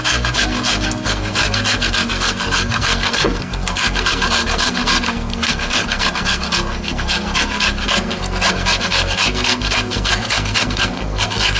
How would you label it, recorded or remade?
remade